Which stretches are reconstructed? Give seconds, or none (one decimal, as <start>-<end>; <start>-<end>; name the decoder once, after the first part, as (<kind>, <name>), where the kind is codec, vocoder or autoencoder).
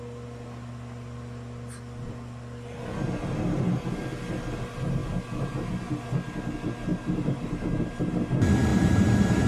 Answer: 6.9-8.1 (vocoder, BigVGAN v2); 8.7-9.5